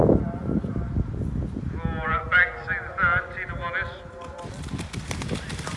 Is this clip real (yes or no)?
yes